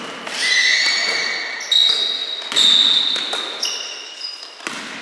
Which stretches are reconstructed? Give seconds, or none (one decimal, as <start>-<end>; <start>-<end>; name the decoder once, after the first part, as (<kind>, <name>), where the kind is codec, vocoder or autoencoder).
0.0-0.7 (vocoder, BigVGAN v2); 3.7-5.0